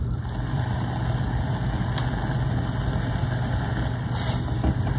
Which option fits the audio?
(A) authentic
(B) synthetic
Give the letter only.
A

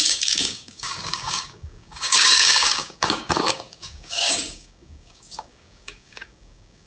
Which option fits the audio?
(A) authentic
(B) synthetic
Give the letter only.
B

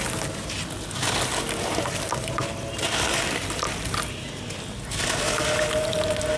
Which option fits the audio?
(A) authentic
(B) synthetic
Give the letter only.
A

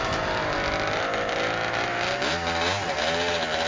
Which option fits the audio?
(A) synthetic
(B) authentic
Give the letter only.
B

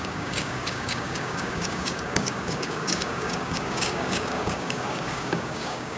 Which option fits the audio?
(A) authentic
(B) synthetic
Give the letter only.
B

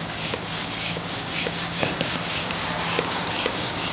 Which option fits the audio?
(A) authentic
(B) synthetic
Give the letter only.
B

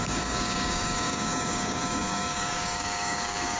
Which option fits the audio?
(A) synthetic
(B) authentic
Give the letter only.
A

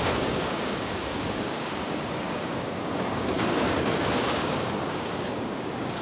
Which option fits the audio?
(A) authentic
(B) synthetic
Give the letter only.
B